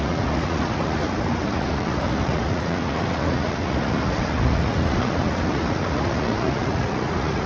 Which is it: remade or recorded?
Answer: remade